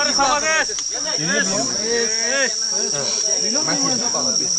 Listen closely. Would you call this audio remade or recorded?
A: recorded